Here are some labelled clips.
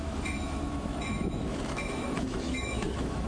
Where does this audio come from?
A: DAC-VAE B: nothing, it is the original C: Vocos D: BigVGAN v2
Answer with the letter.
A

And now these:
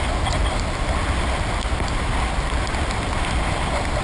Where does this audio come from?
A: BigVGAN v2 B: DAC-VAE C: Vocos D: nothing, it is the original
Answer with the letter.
D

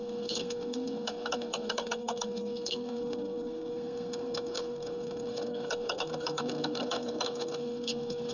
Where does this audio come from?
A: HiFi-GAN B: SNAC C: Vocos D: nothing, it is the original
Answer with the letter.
B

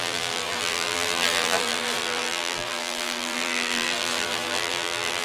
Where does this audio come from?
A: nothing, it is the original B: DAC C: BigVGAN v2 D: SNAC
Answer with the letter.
C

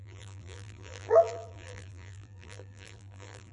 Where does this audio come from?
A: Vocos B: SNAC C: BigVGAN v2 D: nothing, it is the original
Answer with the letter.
C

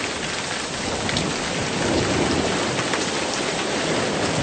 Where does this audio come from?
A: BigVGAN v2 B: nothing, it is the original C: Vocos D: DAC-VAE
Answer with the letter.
B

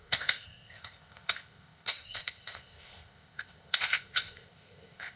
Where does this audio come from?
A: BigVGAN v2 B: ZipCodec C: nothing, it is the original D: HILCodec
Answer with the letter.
B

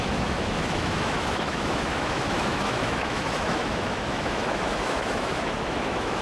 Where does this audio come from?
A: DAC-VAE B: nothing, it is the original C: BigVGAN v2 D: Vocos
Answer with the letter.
A